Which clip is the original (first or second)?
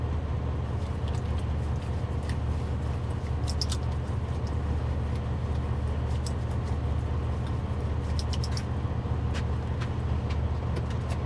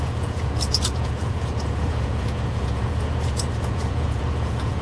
first